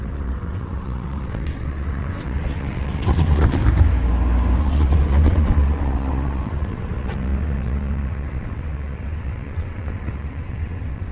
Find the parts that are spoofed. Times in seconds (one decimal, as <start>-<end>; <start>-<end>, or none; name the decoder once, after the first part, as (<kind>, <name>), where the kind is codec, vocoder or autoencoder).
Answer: 0.0-3.6 (vocoder, WaveNeXt); 4.6-11.1